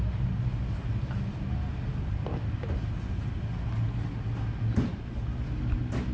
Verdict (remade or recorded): recorded